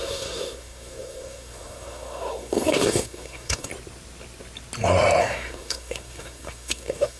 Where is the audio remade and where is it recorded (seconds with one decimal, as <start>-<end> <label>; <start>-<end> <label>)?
0.0-3.7 remade; 3.7-5.2 recorded; 5.2-7.2 remade